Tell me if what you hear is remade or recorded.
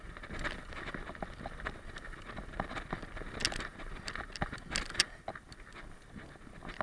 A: recorded